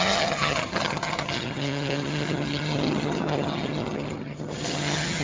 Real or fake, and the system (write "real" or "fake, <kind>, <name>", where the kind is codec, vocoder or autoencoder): fake, vocoder, HiFi-GAN